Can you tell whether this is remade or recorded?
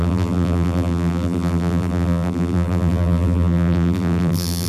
remade